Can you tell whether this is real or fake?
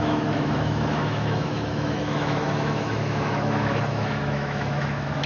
fake